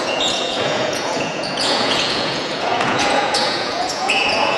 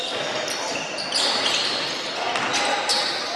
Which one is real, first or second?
second